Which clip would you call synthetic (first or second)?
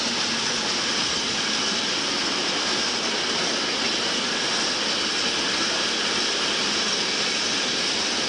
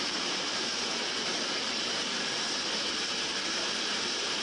second